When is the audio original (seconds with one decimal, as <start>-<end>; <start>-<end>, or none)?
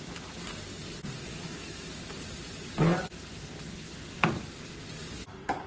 0.0-1.3; 1.9-5.7